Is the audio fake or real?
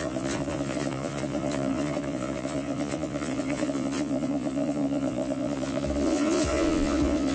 fake